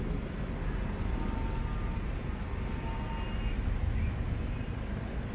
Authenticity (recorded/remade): recorded